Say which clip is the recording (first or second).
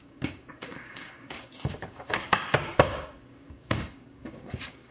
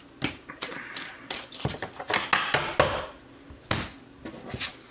second